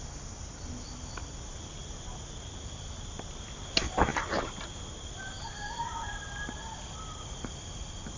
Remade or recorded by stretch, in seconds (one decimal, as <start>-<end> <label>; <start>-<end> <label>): 0.0-8.2 recorded